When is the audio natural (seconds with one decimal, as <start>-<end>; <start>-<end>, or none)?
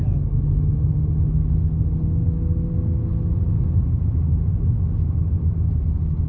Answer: 0.0-6.3